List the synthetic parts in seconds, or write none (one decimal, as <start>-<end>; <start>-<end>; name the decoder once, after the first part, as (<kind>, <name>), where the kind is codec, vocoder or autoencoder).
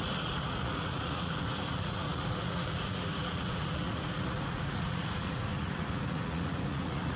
0.0-7.2 (vocoder, Vocos)